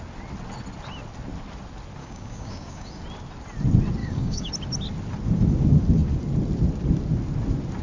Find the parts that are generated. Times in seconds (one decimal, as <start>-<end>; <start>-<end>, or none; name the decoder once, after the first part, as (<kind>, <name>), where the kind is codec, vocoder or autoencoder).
2.0-3.0 (codec, DAC); 4.0-4.5